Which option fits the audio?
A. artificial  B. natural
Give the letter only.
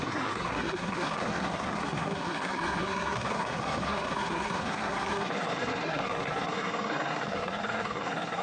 A